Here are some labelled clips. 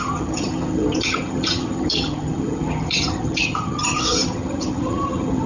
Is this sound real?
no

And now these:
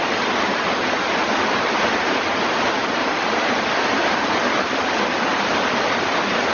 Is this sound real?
yes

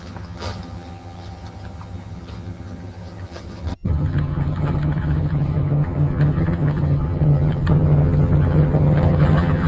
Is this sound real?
no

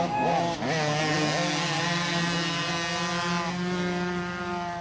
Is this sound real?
yes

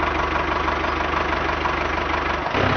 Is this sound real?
yes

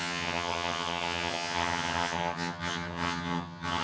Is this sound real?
no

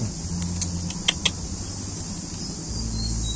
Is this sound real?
yes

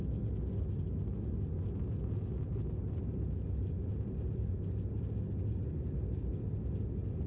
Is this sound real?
yes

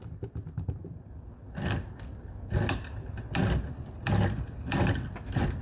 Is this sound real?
yes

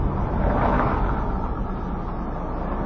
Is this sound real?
yes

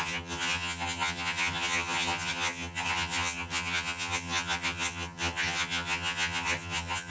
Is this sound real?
no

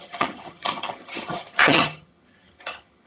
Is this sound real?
no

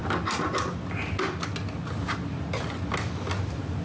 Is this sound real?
yes